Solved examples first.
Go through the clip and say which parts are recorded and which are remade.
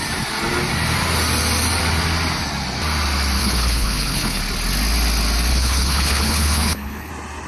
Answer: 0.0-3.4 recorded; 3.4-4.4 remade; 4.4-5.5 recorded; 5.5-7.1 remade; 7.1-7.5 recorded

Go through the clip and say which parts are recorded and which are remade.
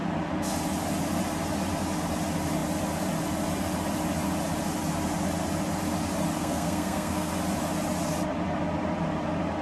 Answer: 0.0-6.4 recorded; 6.4-7.3 remade; 7.3-9.6 recorded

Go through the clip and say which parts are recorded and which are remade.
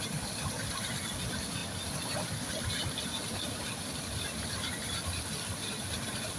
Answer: 0.0-6.4 recorded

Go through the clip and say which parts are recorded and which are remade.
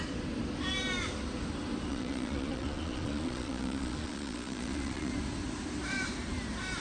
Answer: 0.0-1.9 recorded; 1.9-5.1 remade; 5.1-6.8 recorded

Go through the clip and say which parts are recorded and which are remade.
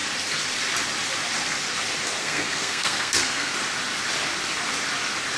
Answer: 0.0-2.2 recorded; 2.2-3.5 remade; 3.5-5.4 recorded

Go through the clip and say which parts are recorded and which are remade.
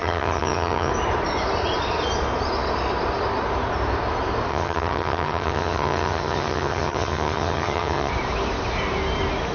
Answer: 0.0-0.9 remade; 0.9-4.5 recorded; 4.5-8.1 remade; 8.1-9.5 recorded